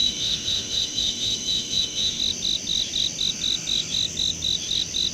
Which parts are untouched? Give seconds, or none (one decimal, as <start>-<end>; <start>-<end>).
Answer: 2.2-5.1